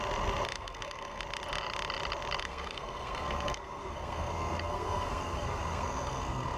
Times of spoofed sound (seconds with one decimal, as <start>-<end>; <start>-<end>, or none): 0.5-1.2; 2.4-6.6